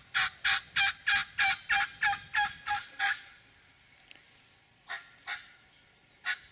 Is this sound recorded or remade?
recorded